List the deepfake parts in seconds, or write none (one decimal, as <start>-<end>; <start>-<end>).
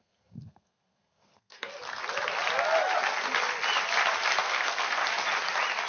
0.0-1.7; 4.4-5.0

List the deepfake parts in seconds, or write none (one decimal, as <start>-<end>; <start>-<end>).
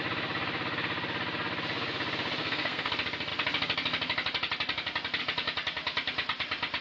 2.4-2.9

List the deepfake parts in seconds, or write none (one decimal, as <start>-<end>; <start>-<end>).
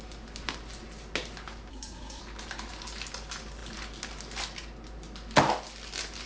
1.7-2.2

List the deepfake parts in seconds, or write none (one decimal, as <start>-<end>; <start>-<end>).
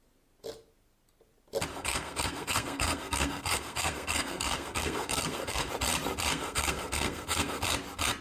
1.7-5.7; 6.3-7.6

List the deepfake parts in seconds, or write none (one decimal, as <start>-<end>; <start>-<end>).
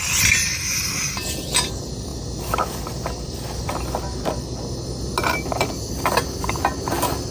none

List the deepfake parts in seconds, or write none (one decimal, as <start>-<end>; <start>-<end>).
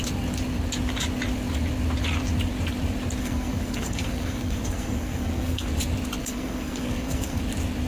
3.2-5.7; 6.2-7.4